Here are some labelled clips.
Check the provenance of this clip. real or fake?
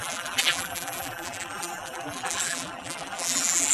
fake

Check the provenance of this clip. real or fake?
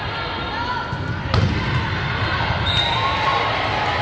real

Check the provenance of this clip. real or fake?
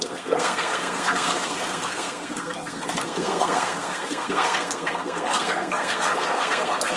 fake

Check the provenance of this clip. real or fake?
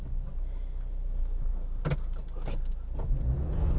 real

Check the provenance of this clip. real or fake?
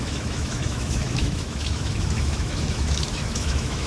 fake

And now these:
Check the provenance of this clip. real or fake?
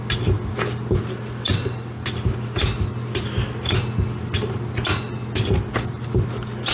real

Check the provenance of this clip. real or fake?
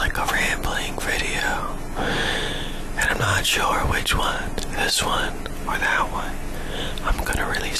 real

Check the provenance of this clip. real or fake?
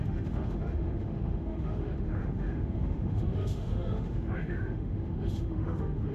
fake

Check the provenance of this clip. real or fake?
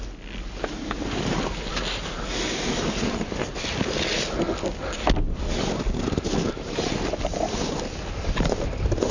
real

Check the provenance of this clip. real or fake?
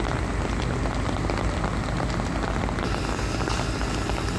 real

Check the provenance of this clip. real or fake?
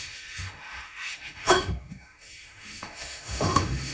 fake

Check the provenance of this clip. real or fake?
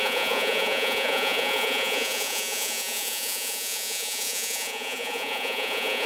fake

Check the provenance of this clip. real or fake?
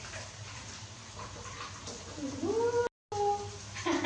real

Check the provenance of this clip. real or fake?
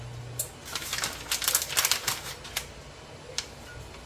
real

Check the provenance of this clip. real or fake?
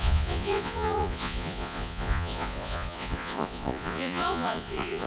fake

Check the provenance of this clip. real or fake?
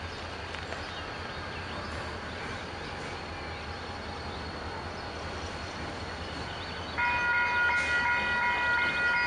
real